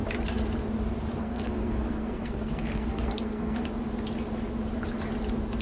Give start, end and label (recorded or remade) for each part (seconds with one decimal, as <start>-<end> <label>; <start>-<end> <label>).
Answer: 0.0-1.2 recorded; 1.2-3.7 remade; 3.7-5.6 recorded